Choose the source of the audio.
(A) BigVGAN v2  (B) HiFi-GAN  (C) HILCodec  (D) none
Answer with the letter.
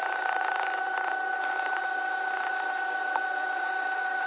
A